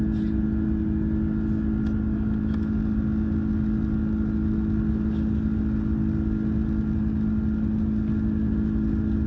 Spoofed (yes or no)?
no